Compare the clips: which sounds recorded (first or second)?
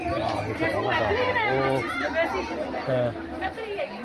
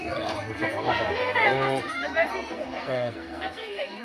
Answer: first